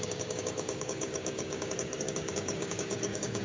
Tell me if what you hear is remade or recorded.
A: remade